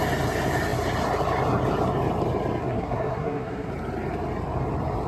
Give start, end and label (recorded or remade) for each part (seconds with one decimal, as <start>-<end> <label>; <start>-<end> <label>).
0.0-2.6 recorded; 2.6-3.7 remade; 3.7-5.1 recorded